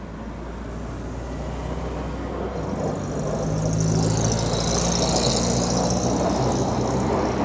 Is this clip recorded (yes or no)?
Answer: yes